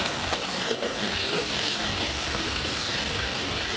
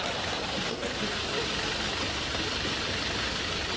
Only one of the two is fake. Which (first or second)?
first